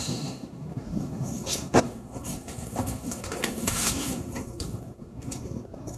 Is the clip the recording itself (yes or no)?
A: no